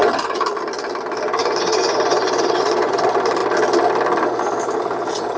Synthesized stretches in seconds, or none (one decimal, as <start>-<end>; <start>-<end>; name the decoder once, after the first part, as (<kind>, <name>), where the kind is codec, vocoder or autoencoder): 1.4-3.0 (vocoder, Vocos)